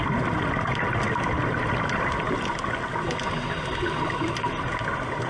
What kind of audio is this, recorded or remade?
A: recorded